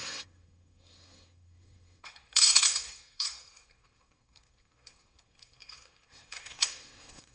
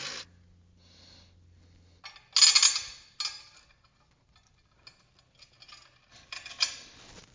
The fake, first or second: first